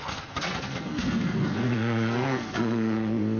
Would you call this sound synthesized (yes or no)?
yes